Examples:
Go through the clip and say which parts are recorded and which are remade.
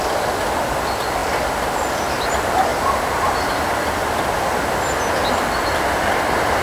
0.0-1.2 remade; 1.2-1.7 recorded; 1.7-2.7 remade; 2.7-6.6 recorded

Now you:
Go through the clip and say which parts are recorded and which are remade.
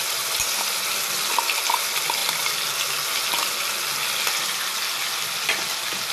0.0-6.1 recorded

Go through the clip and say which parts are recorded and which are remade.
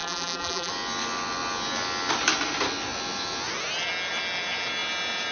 0.0-0.7 remade; 0.7-5.3 recorded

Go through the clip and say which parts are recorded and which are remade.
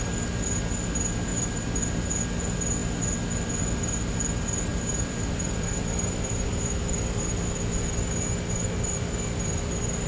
0.0-1.3 recorded; 1.3-1.8 remade; 1.8-4.7 recorded; 4.7-6.5 remade; 6.5-10.1 recorded